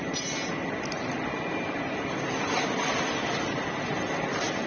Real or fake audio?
real